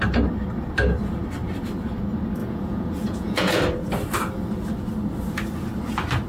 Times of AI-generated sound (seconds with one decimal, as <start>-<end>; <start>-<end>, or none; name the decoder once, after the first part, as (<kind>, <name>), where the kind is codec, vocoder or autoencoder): 2.4-3.6 (vocoder, Vocos)